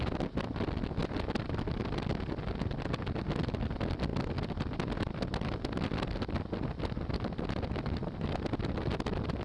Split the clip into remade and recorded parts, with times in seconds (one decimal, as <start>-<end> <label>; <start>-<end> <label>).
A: 0.0-9.4 recorded

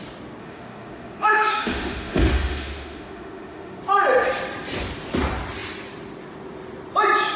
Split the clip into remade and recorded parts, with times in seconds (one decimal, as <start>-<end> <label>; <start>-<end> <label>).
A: 0.0-0.4 recorded; 0.4-3.8 remade; 3.8-7.4 recorded

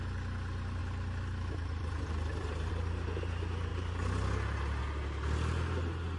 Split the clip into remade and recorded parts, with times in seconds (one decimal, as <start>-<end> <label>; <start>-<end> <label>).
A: 0.0-0.8 recorded; 0.8-2.7 remade; 2.7-6.2 recorded

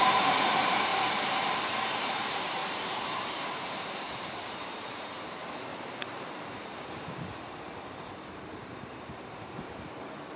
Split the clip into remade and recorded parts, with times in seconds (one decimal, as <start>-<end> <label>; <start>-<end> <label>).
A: 0.0-0.9 remade; 0.9-1.8 recorded; 1.8-10.4 remade

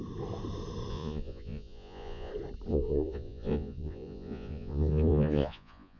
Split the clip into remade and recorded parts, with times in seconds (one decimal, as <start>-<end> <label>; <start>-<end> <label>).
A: 0.0-0.9 recorded; 0.9-2.3 remade; 2.3-2.7 recorded; 2.7-6.0 remade